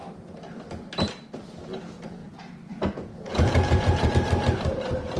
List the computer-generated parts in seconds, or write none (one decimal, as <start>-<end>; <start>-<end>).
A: 2.2-4.1